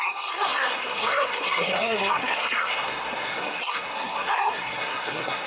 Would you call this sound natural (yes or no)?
no